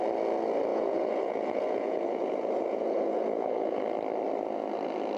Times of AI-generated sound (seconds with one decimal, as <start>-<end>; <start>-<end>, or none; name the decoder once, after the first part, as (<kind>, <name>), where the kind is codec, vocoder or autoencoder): 0.7-3.8 (vocoder, Vocos)

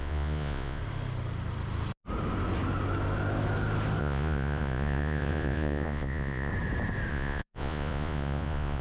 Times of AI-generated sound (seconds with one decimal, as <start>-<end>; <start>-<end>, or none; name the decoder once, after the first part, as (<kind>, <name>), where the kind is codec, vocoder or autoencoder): 0.0-0.8 (vocoder, Vocos); 4.0-6.5; 7.1-8.8

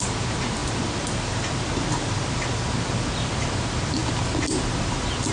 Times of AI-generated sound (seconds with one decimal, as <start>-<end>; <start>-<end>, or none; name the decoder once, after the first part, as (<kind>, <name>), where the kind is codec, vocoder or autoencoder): none

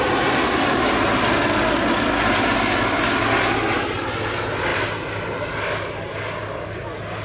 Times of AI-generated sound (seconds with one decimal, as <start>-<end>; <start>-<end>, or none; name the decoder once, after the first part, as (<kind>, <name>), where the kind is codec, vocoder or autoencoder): none

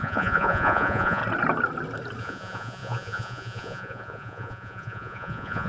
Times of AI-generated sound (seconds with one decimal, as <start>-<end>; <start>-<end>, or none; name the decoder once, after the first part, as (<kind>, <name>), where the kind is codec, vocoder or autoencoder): 0.0-1.2 (vocoder, Vocos); 2.2-5.7